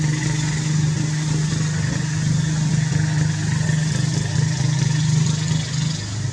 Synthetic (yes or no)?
no